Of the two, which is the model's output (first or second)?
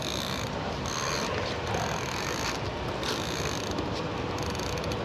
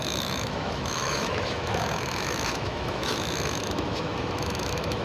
second